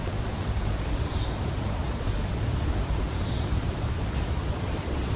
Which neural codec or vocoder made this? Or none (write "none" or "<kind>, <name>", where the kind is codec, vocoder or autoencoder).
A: vocoder, Vocos